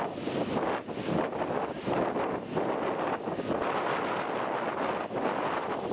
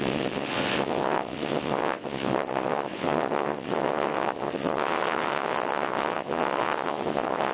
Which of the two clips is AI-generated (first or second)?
second